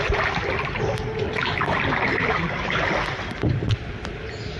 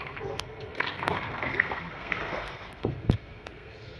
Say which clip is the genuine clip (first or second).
first